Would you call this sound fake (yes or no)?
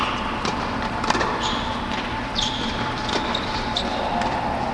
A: yes